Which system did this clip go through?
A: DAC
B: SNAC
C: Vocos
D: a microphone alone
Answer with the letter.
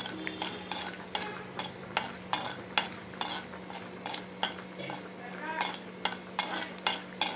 D